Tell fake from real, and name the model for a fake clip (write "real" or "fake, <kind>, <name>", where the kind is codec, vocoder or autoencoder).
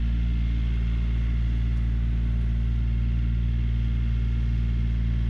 real